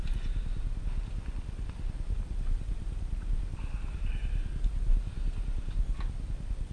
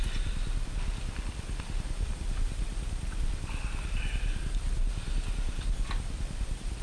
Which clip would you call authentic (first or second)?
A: first